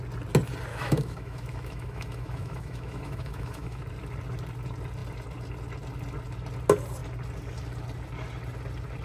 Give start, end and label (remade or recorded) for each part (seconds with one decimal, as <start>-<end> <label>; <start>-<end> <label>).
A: 0.0-0.7 recorded; 0.7-3.8 remade; 3.8-9.0 recorded